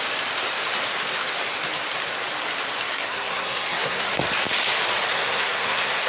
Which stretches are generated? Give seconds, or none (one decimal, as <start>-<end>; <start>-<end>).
2.9-4.0; 5.1-6.1